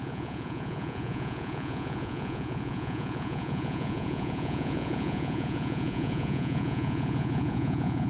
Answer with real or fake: fake